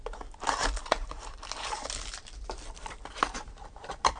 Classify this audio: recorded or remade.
remade